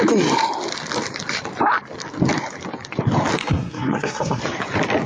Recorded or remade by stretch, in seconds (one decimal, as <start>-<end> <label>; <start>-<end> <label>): 0.0-3.4 recorded; 3.4-4.4 remade; 4.4-5.1 recorded